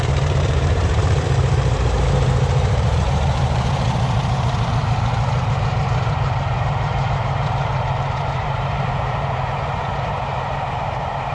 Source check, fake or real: fake